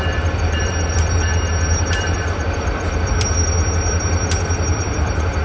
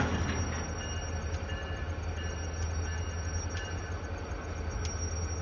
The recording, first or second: second